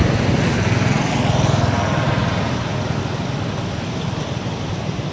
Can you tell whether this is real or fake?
real